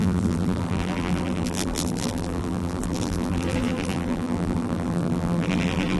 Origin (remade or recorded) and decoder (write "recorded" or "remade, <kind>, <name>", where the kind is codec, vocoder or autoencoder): remade, vocoder, BigVGAN v2